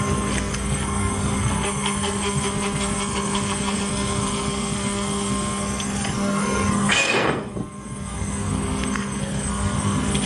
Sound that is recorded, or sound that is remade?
remade